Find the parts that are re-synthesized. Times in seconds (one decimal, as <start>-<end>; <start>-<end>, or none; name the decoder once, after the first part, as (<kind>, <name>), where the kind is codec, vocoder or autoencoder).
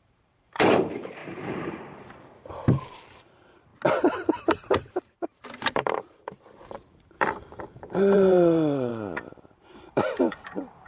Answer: 0.0-3.7 (vocoder, BigVGAN v2); 4.4-8.9; 9.9-10.9